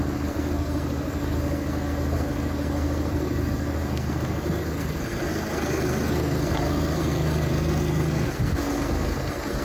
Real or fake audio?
fake